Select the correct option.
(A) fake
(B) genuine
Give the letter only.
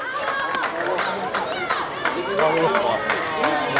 B